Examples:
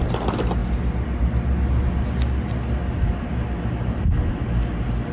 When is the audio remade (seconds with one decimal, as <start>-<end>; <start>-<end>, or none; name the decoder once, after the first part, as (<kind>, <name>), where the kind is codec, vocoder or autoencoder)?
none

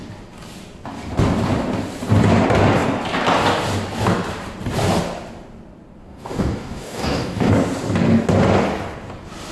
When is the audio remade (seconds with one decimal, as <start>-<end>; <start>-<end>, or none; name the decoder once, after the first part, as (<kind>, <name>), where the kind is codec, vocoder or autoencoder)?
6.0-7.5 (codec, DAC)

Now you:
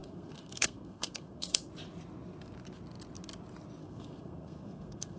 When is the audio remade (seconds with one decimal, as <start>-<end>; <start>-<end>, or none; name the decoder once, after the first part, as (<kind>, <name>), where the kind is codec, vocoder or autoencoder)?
0.0-1.7 (codec, SNAC); 3.8-5.2

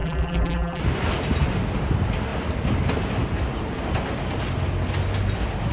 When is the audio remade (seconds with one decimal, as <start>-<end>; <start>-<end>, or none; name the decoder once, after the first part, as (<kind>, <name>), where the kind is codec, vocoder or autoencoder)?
0.0-0.8 (vocoder, BigVGAN v2)

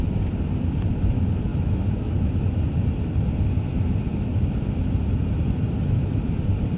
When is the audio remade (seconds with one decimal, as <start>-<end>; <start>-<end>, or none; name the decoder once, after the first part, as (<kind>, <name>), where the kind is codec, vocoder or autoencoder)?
1.5-2.4 (autoencoder, DAC-VAE)

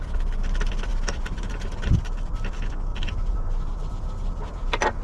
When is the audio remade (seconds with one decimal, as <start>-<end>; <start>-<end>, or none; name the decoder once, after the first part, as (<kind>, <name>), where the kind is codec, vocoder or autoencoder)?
0.9-2.5 (vocoder, BigVGAN v2); 2.9-3.7